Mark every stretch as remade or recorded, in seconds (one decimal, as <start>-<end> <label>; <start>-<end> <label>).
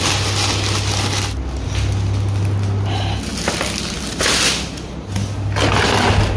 0.0-6.4 recorded